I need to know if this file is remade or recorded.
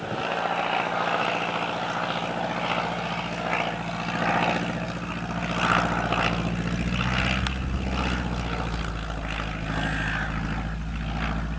recorded